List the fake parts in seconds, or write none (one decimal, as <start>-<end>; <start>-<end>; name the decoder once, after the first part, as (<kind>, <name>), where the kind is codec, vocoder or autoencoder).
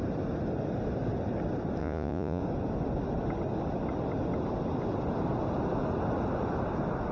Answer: 1.8-2.4 (vocoder, Vocos)